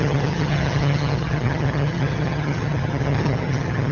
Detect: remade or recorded remade